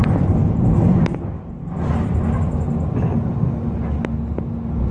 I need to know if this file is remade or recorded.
recorded